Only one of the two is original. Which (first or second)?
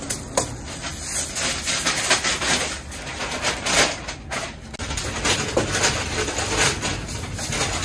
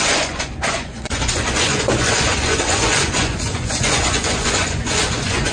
first